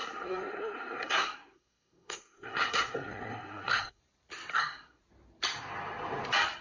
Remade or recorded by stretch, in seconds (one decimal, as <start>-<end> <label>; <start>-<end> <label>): 0.0-4.0 remade; 4.0-4.5 recorded; 4.5-5.0 remade; 5.0-6.6 recorded